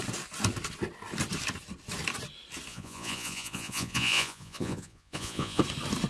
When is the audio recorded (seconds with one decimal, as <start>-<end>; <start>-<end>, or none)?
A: 0.0-2.7; 5.6-6.1